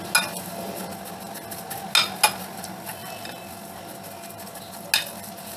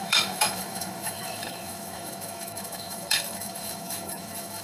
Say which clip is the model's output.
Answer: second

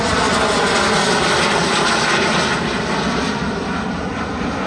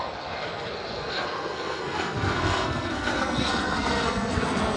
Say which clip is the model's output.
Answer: second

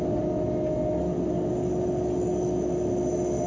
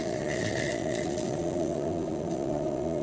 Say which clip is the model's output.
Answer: second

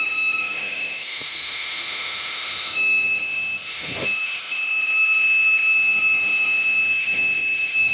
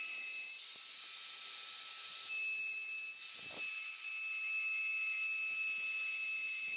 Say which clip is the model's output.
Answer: first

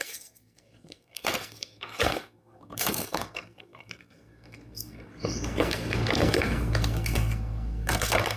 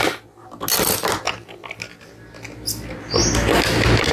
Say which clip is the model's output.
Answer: first